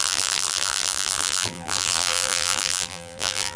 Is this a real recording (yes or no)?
no